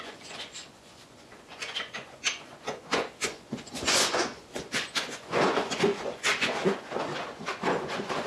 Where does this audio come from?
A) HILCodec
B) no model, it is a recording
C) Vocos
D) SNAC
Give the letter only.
C